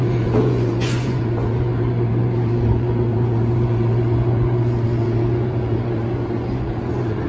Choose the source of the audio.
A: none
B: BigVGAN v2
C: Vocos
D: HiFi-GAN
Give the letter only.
C